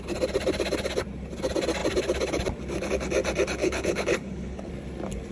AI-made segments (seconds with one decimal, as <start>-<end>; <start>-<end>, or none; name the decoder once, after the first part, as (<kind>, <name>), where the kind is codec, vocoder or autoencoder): 3.6-4.7 (codec, HILCodec)